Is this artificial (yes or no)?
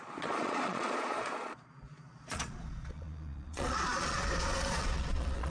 yes